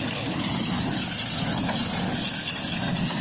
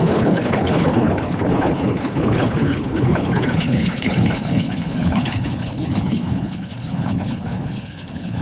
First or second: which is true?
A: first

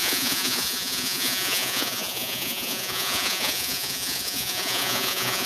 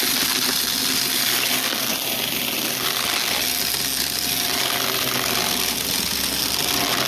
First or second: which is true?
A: second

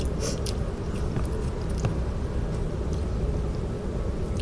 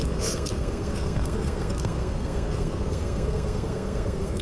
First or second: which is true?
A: first